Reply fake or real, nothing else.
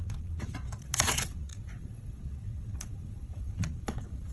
fake